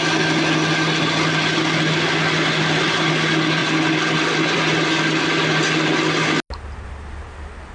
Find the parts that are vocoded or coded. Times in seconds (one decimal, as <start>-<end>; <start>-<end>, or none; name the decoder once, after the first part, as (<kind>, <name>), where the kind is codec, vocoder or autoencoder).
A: 3.6-5.3 (vocoder, BigVGAN v2)